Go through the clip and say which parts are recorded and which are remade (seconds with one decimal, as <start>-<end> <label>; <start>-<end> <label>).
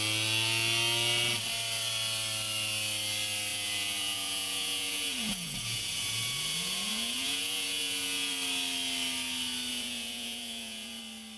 0.0-3.5 recorded; 3.5-8.3 remade; 8.3-9.7 recorded; 9.7-11.0 remade; 11.0-11.4 recorded